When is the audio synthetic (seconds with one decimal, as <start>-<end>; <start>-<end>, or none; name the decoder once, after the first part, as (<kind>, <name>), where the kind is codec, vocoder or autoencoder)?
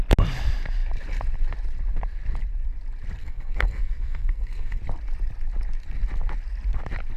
3.2-4.8 (codec, SNAC)